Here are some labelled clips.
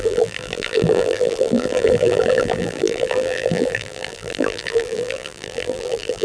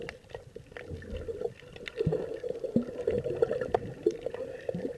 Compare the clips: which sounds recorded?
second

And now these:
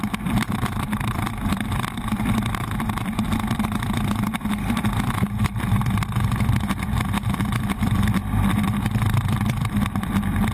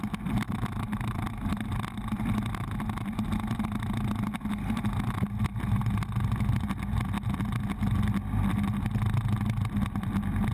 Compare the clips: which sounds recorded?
second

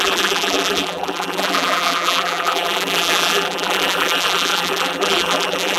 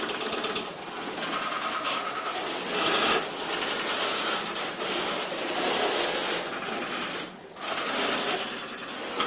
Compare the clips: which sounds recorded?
second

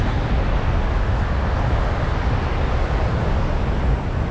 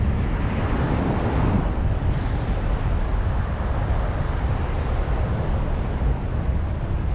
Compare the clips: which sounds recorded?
first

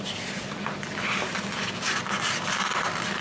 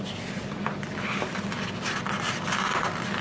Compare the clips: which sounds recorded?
second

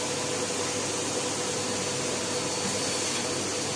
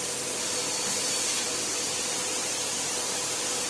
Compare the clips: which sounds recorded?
first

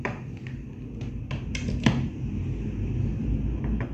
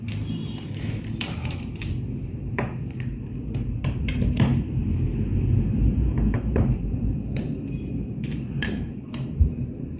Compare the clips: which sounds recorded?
first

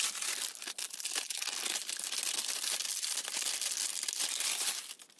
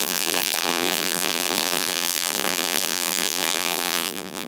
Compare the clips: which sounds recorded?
first